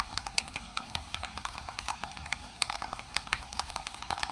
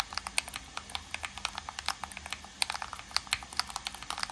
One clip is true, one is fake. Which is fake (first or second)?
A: first